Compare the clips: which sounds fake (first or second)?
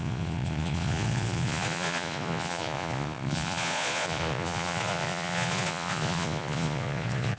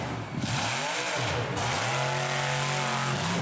first